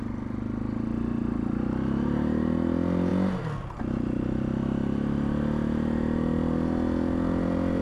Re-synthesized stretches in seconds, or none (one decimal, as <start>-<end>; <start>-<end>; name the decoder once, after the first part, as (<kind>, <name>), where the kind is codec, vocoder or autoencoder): none